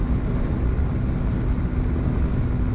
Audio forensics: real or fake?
real